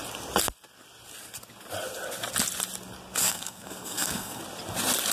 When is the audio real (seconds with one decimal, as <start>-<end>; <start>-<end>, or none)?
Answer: 0.0-3.2; 4.4-5.1